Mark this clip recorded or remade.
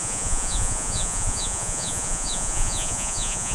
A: remade